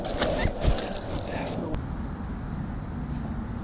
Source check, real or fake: real